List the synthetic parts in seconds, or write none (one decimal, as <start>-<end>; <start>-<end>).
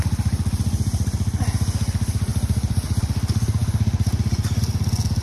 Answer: 2.3-3.0